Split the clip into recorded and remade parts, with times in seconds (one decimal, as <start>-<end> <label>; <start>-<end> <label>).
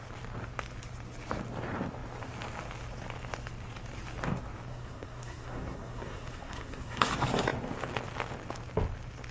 0.0-4.7 recorded; 4.7-7.1 remade; 7.1-9.3 recorded